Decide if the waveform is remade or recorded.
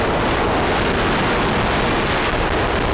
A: recorded